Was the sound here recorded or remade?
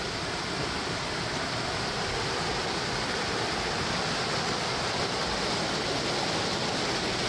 recorded